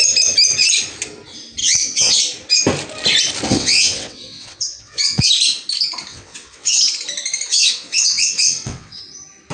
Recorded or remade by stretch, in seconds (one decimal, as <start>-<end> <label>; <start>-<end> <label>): 0.0-1.6 recorded; 1.6-2.2 remade; 2.2-3.5 recorded; 3.5-5.3 remade; 5.3-6.1 recorded; 6.1-6.8 remade; 6.8-7.5 recorded; 7.5-9.0 remade; 9.0-9.5 recorded